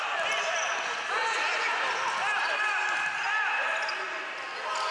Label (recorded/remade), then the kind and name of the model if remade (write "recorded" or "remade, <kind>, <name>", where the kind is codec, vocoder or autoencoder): recorded